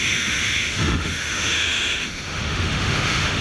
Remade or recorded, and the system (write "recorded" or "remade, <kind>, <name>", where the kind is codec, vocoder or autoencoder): remade, autoencoder, DAC-VAE